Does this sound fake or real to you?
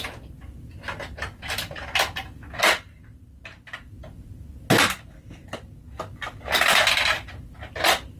real